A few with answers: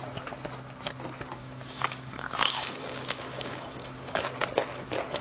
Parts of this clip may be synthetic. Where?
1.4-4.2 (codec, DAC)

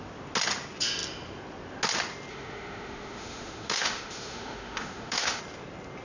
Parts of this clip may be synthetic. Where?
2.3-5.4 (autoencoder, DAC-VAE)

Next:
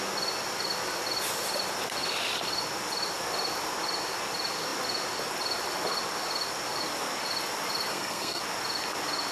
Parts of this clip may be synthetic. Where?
7.9-8.4 (codec, SNAC)